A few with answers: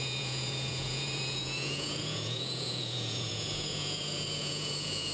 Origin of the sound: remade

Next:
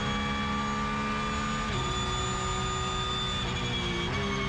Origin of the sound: recorded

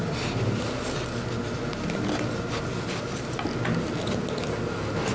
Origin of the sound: recorded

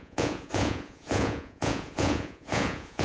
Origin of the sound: remade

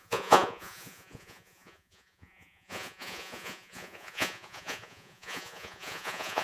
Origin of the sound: remade